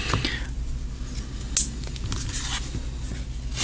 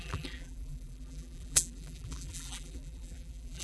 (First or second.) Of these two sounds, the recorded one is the first